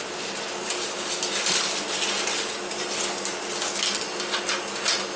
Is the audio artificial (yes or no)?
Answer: no